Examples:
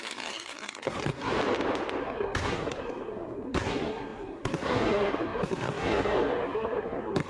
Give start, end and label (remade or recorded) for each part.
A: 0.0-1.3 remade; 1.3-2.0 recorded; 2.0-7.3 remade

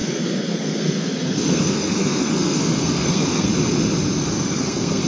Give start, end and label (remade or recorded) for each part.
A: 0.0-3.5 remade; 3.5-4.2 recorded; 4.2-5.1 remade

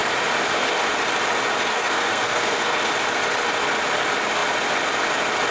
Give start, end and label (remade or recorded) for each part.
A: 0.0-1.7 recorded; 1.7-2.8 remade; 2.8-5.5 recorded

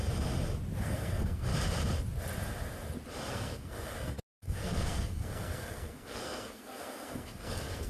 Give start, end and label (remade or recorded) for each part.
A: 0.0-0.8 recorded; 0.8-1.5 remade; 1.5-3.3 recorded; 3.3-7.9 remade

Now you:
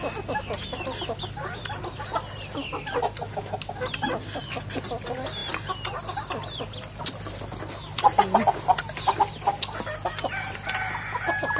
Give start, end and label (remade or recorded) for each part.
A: 0.0-11.6 recorded